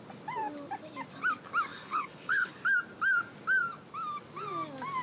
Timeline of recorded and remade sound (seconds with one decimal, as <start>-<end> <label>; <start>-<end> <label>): 0.0-1.7 recorded; 1.7-2.5 remade; 2.5-5.0 recorded